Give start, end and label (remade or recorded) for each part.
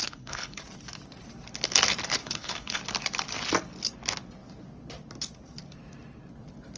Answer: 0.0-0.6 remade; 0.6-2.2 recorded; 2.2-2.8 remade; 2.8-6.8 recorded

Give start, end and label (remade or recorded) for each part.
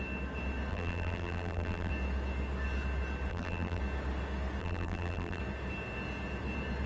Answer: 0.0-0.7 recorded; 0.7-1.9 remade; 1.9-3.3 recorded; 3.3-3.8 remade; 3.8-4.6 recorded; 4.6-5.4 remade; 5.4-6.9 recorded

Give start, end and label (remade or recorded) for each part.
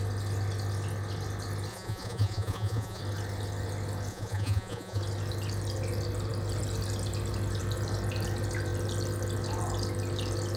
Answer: 0.0-1.7 recorded; 1.7-3.0 remade; 3.0-4.1 recorded; 4.1-5.0 remade; 5.0-10.6 recorded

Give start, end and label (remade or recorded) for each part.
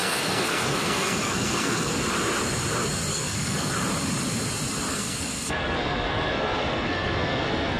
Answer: 0.0-1.9 remade; 1.9-3.1 recorded; 3.1-3.7 remade; 3.7-4.9 recorded; 4.9-7.8 remade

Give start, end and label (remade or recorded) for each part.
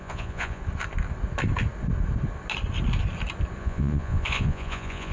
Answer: 0.0-0.6 remade; 0.6-3.6 recorded; 3.6-5.1 remade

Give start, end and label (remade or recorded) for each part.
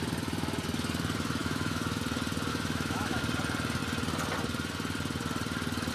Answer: 0.0-1.4 recorded; 1.4-2.0 remade; 2.0-2.5 recorded; 2.5-3.2 remade; 3.2-5.9 recorded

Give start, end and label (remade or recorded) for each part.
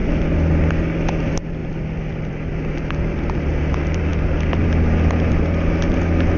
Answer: 0.0-6.4 recorded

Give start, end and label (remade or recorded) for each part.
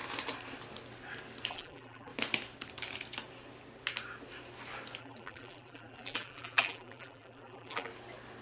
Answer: 0.0-1.5 recorded; 1.5-2.1 remade; 2.1-5.0 recorded; 5.0-7.9 remade; 7.9-8.4 recorded